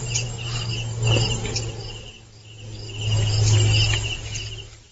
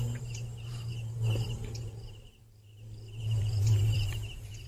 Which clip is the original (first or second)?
first